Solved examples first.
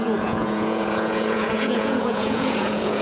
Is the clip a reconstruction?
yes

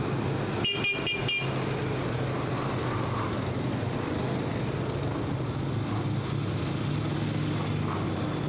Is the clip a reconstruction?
no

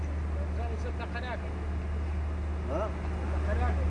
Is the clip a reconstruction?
no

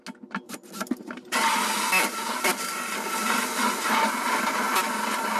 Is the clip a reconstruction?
no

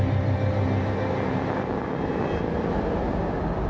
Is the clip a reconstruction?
no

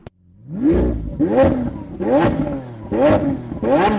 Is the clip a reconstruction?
no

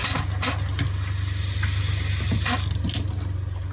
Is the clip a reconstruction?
no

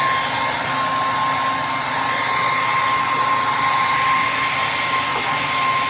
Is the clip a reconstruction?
no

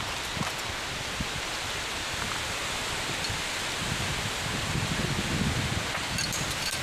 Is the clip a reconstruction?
no